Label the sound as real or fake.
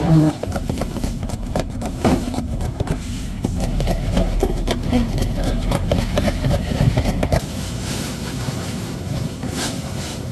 fake